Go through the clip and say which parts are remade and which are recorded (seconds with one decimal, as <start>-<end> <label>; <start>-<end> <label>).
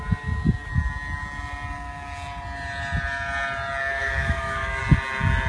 0.0-4.0 recorded; 4.0-4.8 remade; 4.8-5.5 recorded